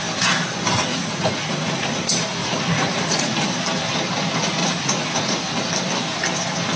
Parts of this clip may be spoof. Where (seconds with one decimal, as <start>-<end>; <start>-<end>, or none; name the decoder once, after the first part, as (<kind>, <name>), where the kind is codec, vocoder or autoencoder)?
0.9-2.0 (vocoder, Vocos); 2.4-3.4; 4.6-5.4